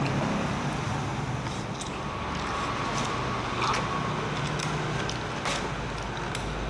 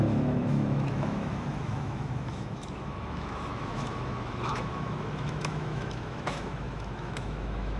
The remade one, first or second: second